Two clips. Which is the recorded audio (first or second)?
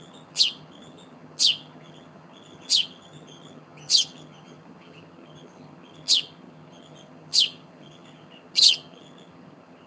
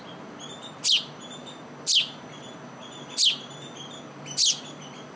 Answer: second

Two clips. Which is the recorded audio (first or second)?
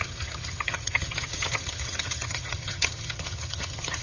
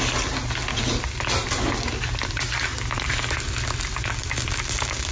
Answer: second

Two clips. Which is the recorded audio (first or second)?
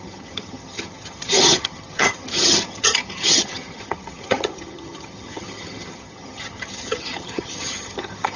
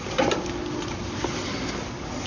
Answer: second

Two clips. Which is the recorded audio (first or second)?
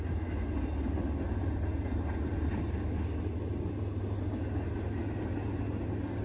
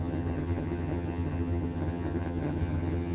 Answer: first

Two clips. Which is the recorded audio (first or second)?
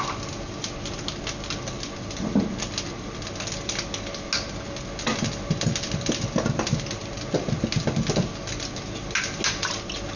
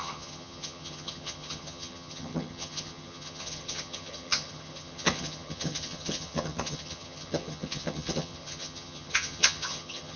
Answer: first